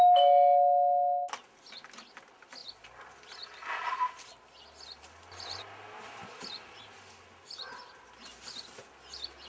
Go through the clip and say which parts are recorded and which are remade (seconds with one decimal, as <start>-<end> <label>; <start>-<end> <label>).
0.0-9.5 recorded